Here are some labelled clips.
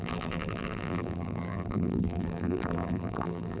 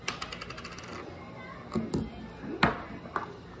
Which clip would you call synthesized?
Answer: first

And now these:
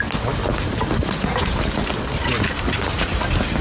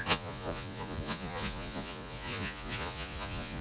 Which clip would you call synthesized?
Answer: second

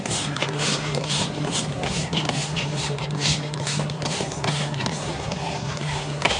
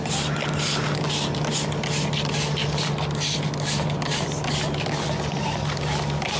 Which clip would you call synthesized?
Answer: first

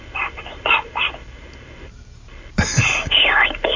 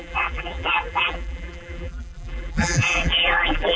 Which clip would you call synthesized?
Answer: second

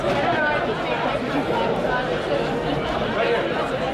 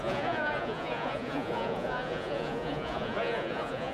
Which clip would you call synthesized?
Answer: second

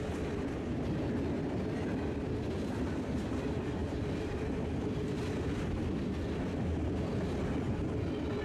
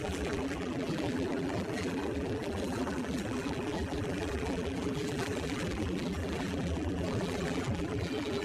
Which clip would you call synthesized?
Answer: second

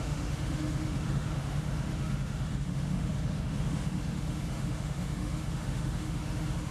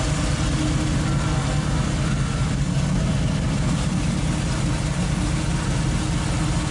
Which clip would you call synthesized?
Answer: first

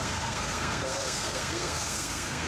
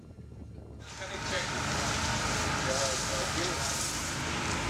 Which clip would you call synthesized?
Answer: first